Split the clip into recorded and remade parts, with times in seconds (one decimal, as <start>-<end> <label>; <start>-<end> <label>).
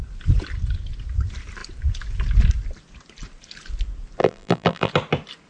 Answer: 0.0-4.2 recorded; 4.2-4.9 remade; 4.9-5.5 recorded